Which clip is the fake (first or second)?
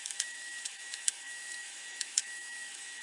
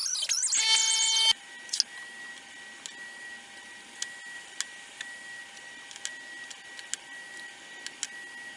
first